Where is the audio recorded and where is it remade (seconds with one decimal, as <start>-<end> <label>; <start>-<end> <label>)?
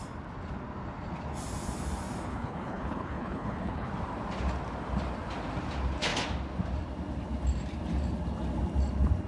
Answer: 0.0-2.3 recorded; 2.3-3.9 remade; 3.9-9.3 recorded